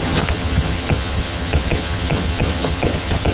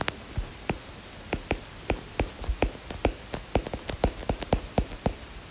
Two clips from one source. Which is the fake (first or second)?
first